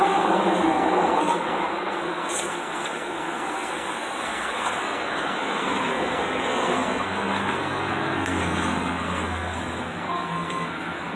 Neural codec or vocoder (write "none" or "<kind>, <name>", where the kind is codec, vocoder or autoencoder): codec, SNAC